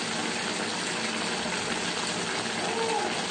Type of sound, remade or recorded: recorded